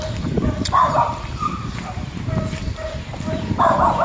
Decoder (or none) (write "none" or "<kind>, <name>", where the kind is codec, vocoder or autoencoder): vocoder, BigVGAN v2